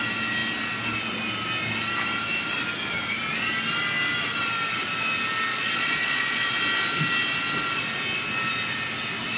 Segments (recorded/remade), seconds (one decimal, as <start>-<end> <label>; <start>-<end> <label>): 0.0-5.5 recorded; 5.5-6.6 remade; 6.6-9.4 recorded